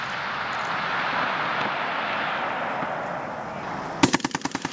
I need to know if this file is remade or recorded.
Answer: recorded